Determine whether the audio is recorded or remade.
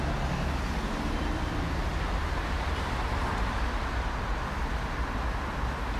recorded